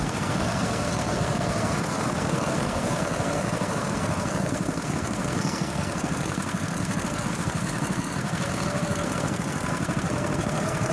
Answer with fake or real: fake